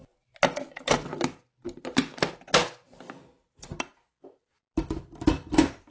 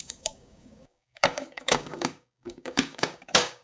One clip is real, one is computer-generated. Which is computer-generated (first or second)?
second